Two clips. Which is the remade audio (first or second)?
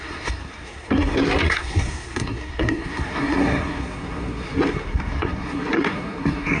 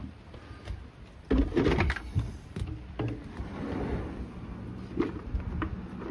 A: first